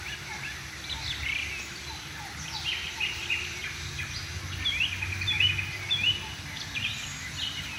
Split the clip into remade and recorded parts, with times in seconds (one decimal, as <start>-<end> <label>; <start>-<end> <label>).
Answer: 0.0-7.8 recorded